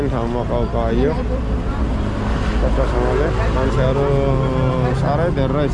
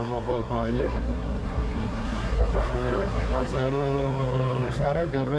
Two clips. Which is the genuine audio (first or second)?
first